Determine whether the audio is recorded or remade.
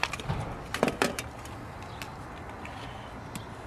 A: recorded